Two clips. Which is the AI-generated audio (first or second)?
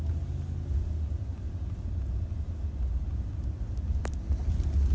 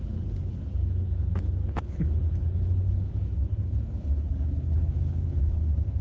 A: second